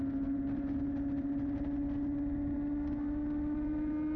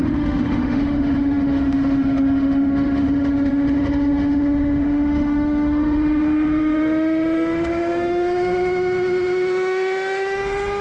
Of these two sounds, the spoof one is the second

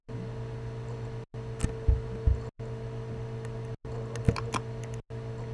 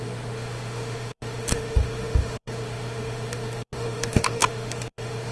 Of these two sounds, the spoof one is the second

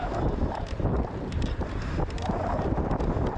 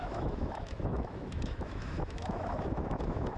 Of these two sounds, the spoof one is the second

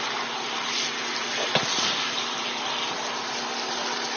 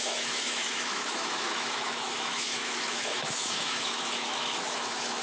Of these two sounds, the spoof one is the second